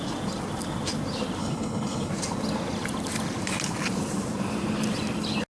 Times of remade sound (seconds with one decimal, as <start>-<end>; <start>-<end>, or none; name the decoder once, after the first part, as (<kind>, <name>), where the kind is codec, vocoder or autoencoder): 1.4-2.1 (codec, HILCodec)